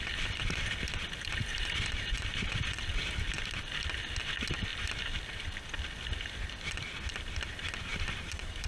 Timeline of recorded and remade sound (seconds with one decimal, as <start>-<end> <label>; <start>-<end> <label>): 0.0-1.5 recorded; 1.5-2.6 remade; 2.6-7.9 recorded; 7.9-8.7 remade